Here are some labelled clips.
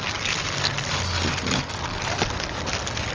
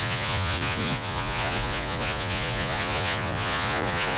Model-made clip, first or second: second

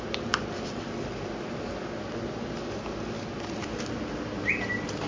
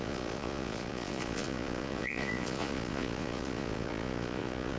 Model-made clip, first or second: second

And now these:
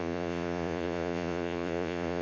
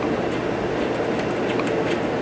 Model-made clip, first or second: first